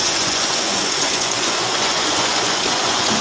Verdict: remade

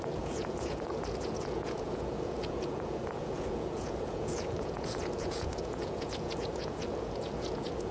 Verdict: remade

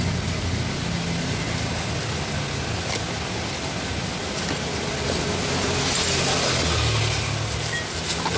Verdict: recorded